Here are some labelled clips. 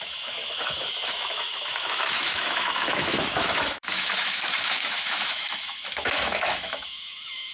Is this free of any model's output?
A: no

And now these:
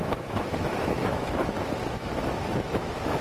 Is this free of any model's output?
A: no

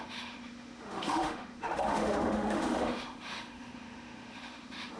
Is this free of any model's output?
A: no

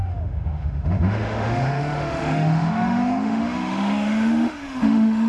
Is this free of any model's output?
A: no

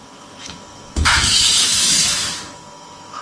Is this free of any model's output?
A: no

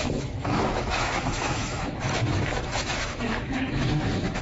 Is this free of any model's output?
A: no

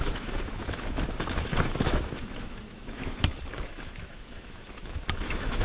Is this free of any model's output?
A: no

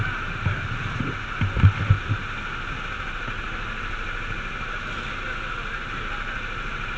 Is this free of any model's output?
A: yes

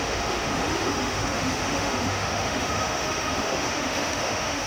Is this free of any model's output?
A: no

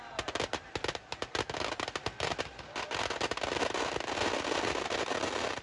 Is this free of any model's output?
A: yes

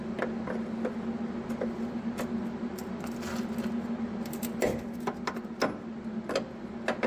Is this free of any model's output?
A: yes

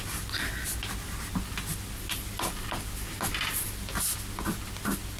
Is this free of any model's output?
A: yes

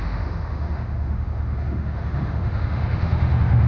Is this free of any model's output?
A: no